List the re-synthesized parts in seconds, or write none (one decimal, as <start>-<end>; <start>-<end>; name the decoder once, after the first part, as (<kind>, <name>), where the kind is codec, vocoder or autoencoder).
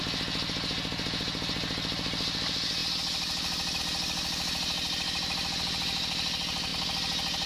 none